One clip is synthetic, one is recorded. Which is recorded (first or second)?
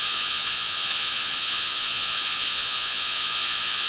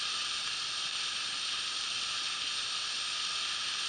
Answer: second